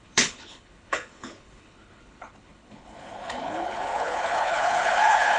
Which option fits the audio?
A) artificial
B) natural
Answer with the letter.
A